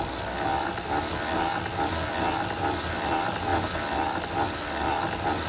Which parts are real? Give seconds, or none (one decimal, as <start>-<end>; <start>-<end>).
0.0-0.5; 1.0-3.5; 4.2-5.5